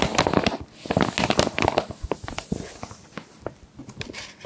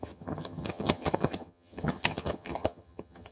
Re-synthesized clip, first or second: second